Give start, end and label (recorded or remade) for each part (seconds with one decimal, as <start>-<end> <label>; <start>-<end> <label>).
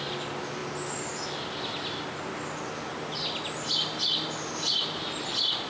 0.0-5.7 recorded